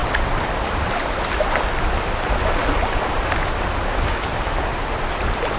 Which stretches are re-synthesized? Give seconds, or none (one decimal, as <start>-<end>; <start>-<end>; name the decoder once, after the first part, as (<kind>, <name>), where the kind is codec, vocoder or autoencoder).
none